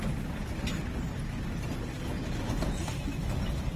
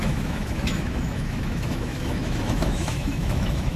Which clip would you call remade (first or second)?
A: second